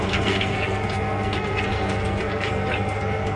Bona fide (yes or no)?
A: no